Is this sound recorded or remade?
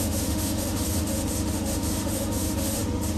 remade